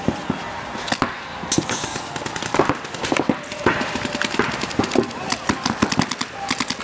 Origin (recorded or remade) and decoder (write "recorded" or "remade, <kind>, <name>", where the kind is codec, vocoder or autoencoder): recorded